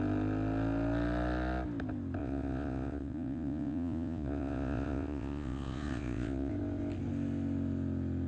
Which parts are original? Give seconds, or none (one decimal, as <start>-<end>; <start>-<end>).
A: 0.0-2.2; 6.5-8.3